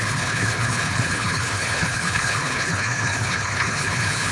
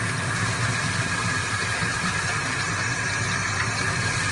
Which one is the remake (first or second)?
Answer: first